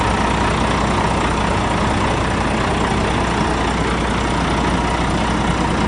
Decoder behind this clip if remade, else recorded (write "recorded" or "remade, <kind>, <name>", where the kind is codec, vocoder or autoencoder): recorded